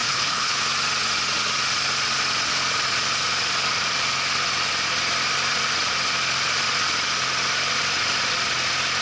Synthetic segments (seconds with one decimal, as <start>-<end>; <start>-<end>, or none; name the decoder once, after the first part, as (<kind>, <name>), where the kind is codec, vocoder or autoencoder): 0.0-0.6 (codec, HILCodec)